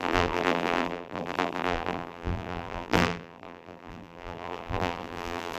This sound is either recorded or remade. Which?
remade